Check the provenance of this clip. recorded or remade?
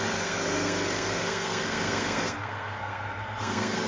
remade